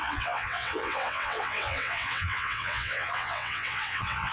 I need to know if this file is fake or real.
fake